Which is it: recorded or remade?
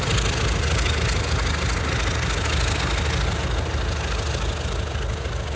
recorded